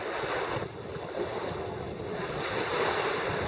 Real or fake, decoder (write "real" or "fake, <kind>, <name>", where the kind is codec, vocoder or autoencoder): real